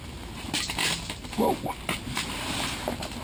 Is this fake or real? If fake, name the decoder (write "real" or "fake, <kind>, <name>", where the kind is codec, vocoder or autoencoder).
real